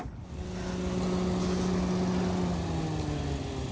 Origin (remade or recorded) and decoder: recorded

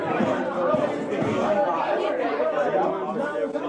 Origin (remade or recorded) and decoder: remade, vocoder, BigVGAN v2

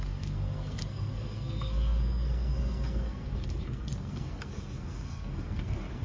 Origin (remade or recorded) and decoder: remade, codec, SNAC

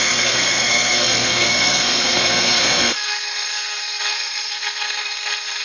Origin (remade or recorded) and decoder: remade, codec, SNAC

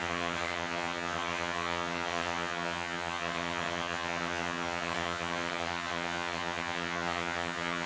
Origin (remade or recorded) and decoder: remade, vocoder, HiFi-GAN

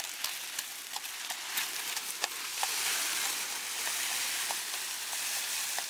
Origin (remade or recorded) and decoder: recorded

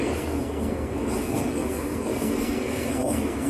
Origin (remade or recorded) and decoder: remade, codec, SNAC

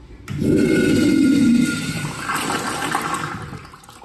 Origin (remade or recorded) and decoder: recorded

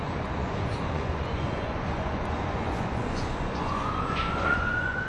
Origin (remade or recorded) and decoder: remade, vocoder, Vocos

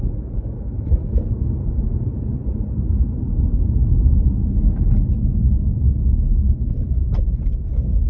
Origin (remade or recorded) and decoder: recorded